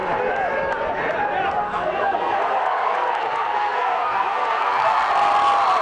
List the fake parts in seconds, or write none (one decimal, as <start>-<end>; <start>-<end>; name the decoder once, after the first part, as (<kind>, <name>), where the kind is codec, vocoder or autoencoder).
1.6-5.1 (codec, SNAC)